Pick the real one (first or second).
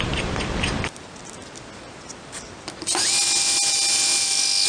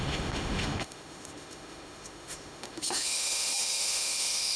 first